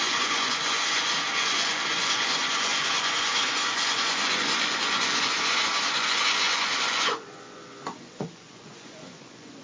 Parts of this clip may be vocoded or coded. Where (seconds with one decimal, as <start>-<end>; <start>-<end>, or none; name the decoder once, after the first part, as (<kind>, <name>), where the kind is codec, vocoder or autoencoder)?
0.0-9.6 (vocoder, Vocos)